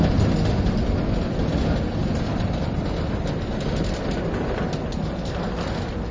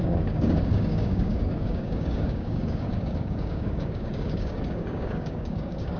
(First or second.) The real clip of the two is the first